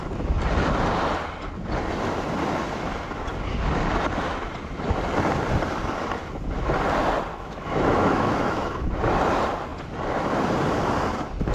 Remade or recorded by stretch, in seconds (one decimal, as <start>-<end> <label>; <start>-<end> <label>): 0.0-7.3 recorded; 7.3-8.9 remade; 8.9-11.5 recorded